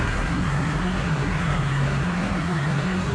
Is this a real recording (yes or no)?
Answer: no